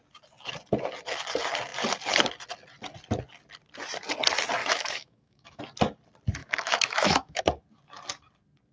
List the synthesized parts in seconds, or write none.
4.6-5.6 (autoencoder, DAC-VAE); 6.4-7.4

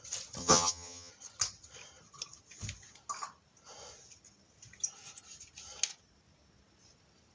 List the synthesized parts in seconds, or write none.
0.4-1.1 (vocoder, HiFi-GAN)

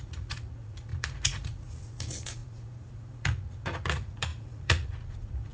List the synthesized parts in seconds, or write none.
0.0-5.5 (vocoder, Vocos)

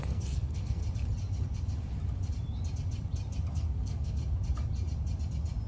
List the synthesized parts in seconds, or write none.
0.0-0.8 (codec, SNAC); 3.5-4.2